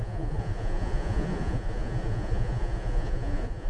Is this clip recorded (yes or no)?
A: no